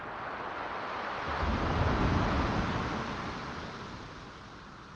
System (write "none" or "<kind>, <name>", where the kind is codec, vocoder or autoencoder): none